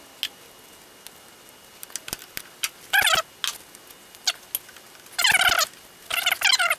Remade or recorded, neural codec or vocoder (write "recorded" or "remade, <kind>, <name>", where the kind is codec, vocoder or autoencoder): recorded